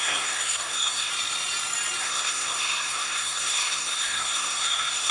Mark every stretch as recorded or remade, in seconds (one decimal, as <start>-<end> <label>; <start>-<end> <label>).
0.0-1.1 remade; 1.1-2.0 recorded; 2.0-5.1 remade